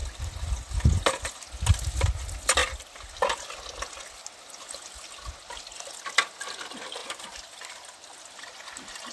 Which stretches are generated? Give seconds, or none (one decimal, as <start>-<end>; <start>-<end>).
0.0-0.8; 2.6-3.2; 7.0-8.2